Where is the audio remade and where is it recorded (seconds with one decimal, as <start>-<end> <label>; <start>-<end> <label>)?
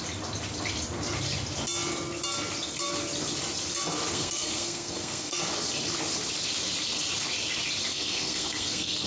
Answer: 0.0-4.1 recorded; 4.1-5.4 remade; 5.4-7.9 recorded; 7.9-9.1 remade